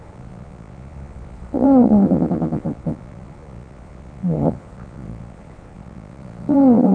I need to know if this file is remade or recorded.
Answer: remade